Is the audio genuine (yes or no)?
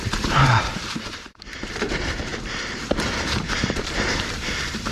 no